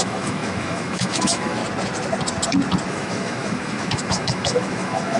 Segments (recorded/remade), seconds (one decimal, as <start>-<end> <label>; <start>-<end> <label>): 0.0-1.6 remade; 1.6-2.9 recorded; 2.9-5.2 remade